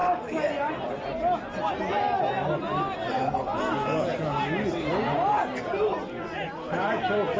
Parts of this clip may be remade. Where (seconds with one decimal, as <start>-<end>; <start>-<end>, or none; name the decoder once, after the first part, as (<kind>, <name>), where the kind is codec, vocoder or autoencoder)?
none